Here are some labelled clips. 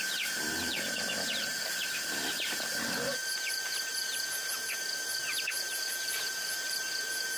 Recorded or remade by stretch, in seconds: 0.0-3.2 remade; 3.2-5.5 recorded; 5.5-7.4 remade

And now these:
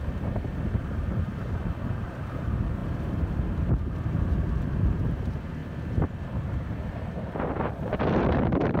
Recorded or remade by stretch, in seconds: 0.0-1.3 remade; 1.3-2.0 recorded; 2.0-5.6 remade; 5.6-6.2 recorded; 6.2-8.8 remade

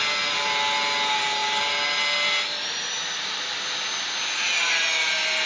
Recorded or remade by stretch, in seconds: 0.0-5.5 recorded

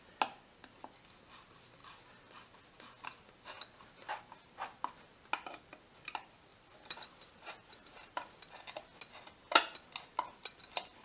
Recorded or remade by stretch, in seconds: 0.0-11.0 recorded

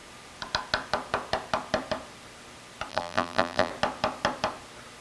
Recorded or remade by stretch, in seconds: 0.0-2.9 recorded; 2.9-3.7 remade; 3.7-5.0 recorded